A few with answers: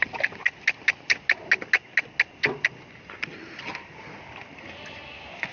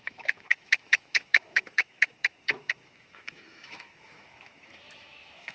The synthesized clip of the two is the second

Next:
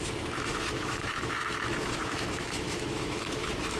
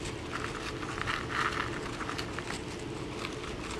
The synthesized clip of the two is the first